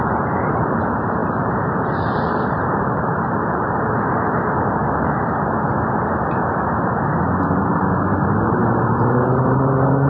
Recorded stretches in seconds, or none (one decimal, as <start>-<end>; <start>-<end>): 4.8-7.6